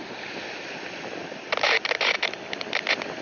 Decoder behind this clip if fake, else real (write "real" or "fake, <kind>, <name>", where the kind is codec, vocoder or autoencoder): real